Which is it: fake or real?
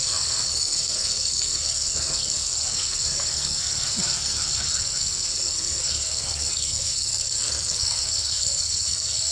fake